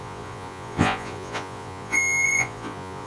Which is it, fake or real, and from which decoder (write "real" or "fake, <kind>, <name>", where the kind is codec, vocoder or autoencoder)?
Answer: fake, vocoder, Vocos